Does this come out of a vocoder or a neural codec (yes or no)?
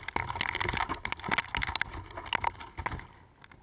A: no